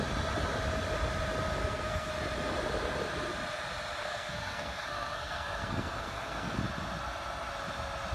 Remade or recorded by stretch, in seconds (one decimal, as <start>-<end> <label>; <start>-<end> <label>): 0.0-1.6 recorded; 1.6-2.1 remade; 2.1-4.0 recorded; 4.0-6.6 remade; 6.6-8.1 recorded